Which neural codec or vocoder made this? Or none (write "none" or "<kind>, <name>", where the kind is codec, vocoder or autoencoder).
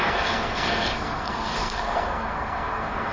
codec, SNAC